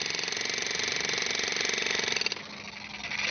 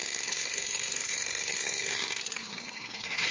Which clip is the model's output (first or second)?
second